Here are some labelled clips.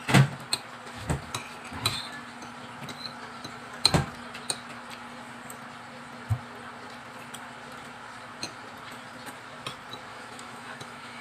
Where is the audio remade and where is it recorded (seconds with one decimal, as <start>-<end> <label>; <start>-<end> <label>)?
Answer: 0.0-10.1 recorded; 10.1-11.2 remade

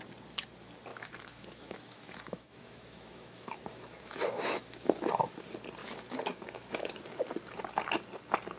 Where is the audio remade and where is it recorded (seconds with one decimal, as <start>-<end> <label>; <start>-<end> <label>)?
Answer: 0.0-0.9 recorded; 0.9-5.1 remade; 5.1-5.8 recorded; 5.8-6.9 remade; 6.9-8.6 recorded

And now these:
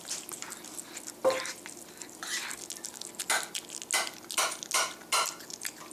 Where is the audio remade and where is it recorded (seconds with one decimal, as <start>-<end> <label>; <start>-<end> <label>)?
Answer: 0.0-5.9 recorded

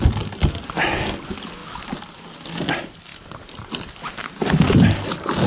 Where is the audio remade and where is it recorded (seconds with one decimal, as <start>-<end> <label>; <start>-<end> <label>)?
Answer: 0.0-5.5 recorded

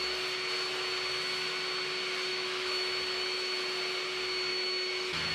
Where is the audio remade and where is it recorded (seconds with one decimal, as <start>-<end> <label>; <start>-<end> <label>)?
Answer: 0.0-2.3 recorded; 2.3-3.6 remade; 3.6-4.5 recorded; 4.5-5.3 remade